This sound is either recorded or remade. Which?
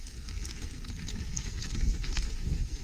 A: remade